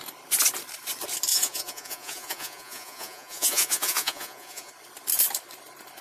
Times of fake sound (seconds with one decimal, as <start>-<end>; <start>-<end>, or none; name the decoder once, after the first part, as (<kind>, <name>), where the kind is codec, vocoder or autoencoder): 1.3-4.7 (vocoder, Vocos)

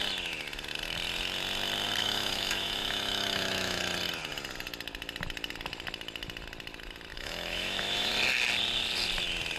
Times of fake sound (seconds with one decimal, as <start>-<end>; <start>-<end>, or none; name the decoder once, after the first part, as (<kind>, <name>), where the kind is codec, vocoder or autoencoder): 2.0-3.8 (autoencoder, DAC-VAE); 7.1-8.1

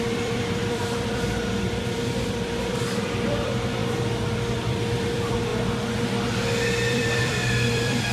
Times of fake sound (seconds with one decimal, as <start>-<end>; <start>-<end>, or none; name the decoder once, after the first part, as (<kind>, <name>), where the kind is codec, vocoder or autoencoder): 0.0-3.8 (vocoder, BigVGAN v2); 4.7-5.5; 6.9-8.1

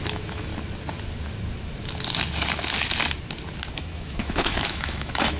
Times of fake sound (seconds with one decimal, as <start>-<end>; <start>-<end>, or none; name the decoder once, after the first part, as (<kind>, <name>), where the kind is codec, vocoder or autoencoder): 0.0-0.5 (autoencoder, DAC-VAE); 3.7-5.4

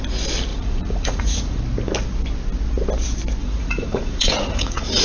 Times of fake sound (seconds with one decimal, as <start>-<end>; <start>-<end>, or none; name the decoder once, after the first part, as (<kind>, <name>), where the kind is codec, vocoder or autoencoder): 0.5-1.6 (vocoder, Vocos); 3.4-5.0

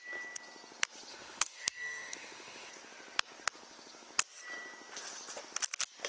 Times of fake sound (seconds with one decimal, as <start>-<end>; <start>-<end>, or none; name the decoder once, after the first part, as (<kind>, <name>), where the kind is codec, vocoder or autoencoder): 1.1-2.7 (autoencoder, DAC-VAE)

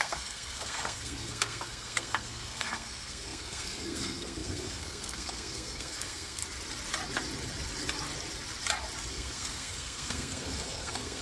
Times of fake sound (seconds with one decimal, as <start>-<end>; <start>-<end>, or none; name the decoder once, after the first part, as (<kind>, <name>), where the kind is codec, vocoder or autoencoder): 0.0-6.4 (codec, SNAC); 9.1-11.2